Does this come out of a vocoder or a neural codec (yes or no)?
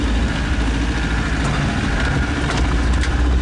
no